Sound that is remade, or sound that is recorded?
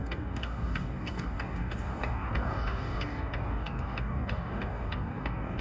remade